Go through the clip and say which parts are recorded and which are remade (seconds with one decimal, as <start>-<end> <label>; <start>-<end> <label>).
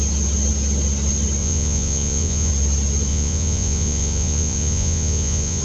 0.0-1.4 recorded; 1.4-2.5 remade; 2.5-3.1 recorded; 3.1-5.6 remade